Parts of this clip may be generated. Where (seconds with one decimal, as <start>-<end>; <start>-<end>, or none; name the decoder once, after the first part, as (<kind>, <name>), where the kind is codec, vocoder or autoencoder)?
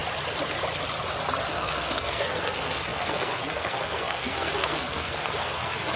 1.5-6.0 (codec, SNAC)